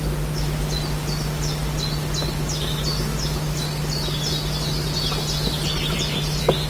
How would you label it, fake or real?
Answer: real